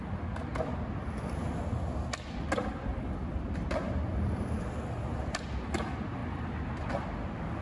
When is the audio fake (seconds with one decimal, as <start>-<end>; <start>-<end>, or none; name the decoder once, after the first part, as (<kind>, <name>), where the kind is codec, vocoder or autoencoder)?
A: none